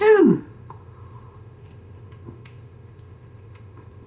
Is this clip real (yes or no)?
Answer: no